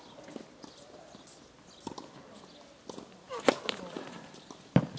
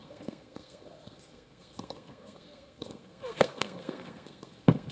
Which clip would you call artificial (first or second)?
second